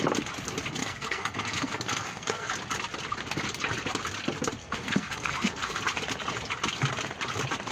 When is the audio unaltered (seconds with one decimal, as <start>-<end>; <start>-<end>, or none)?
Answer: 0.0-0.8; 2.5-4.6; 5.8-7.7

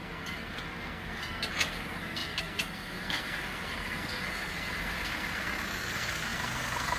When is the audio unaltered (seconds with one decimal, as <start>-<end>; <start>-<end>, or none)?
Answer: none